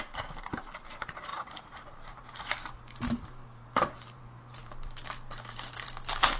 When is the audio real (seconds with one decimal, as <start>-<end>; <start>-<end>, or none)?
none